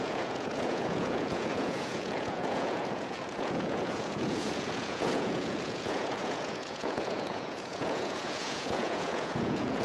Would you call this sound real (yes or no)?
no